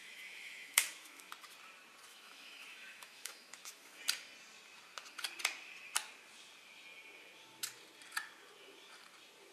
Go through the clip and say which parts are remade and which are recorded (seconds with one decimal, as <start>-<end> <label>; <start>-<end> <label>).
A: 0.0-1.3 remade; 1.3-2.1 recorded; 2.1-4.0 remade; 4.0-9.5 recorded